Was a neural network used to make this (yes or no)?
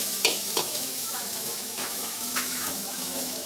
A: yes